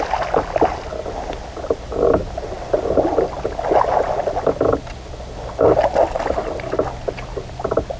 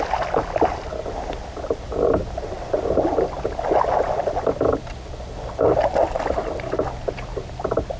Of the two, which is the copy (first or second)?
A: second